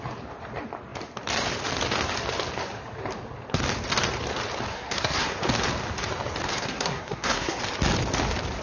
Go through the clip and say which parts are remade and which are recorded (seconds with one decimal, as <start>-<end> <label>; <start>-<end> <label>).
0.0-4.7 recorded; 4.7-5.4 remade; 5.4-6.5 recorded; 6.5-7.6 remade; 7.6-8.6 recorded